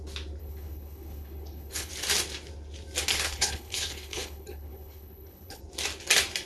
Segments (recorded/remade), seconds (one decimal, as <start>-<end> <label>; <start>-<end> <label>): 0.0-0.4 recorded; 0.4-1.9 remade; 1.9-3.1 recorded; 3.1-5.6 remade; 5.6-6.5 recorded

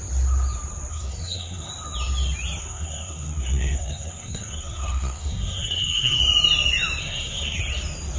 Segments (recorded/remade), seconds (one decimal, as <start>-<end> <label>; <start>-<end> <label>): 0.0-0.9 recorded; 0.9-1.7 remade; 1.7-2.6 recorded; 2.6-6.2 remade; 6.2-7.0 recorded; 7.0-7.6 remade; 7.6-8.2 recorded

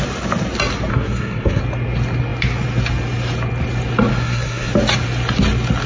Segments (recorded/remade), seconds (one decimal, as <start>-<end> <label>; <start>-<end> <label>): 0.0-0.9 recorded; 0.9-1.6 remade; 1.6-4.1 recorded; 4.1-4.7 remade; 4.7-5.9 recorded

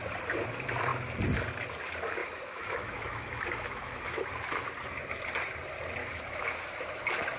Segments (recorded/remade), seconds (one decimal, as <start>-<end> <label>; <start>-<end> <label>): 0.0-2.2 recorded; 2.2-4.2 remade; 4.2-6.0 recorded; 6.0-7.0 remade; 7.0-7.4 recorded

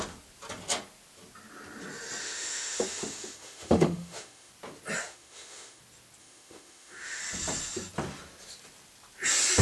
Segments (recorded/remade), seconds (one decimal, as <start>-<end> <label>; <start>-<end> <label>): 0.0-2.2 recorded; 2.2-4.5 remade; 4.5-5.0 recorded; 5.0-5.8 remade; 5.8-6.2 recorded; 6.2-7.2 remade; 7.2-9.6 recorded